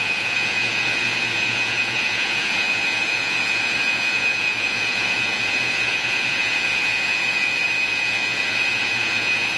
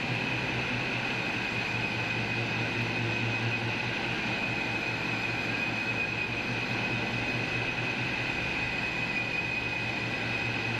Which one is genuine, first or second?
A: second